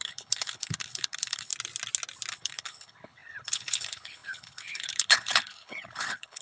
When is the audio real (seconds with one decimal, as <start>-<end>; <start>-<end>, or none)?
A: 1.5-2.3